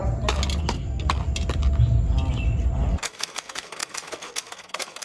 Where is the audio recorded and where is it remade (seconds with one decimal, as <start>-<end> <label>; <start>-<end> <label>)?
0.0-0.6 recorded; 0.6-1.2 remade; 1.2-2.9 recorded; 2.9-5.0 remade